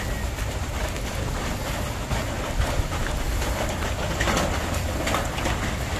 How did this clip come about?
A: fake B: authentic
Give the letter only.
B